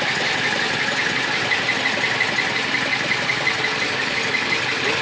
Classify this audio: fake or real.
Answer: real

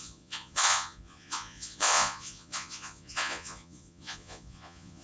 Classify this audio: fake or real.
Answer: fake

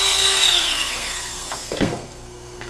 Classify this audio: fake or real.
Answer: fake